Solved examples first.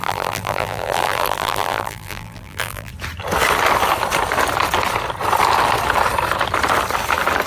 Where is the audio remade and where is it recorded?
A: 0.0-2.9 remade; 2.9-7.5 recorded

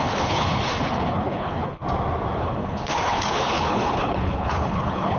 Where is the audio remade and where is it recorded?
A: 0.0-1.8 remade; 1.8-2.4 recorded; 2.4-5.2 remade

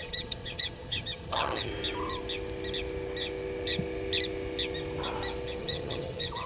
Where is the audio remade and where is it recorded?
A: 0.0-1.7 remade; 1.7-5.6 recorded; 5.6-6.5 remade

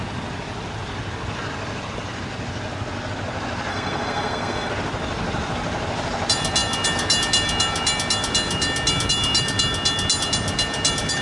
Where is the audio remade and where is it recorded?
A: 0.0-3.7 recorded; 3.7-4.7 remade; 4.7-11.2 recorded

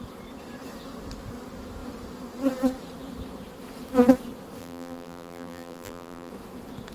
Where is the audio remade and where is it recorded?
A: 0.0-4.6 recorded; 4.6-6.3 remade; 6.3-6.9 recorded

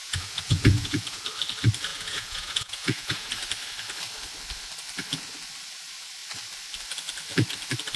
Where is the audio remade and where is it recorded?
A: 0.0-1.2 remade; 1.2-1.9 recorded; 1.9-3.3 remade; 3.3-8.0 recorded